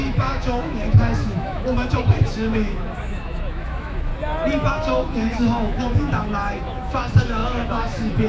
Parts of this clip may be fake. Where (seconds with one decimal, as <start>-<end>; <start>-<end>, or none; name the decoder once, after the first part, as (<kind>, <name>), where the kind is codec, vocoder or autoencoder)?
0.0-4.1 (autoencoder, DAC-VAE); 4.7-8.3